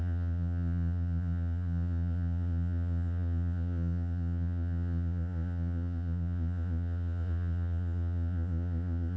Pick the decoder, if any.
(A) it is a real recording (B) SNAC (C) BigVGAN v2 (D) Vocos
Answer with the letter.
D